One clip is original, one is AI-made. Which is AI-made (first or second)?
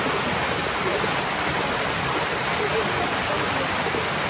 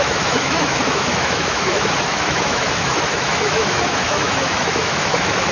second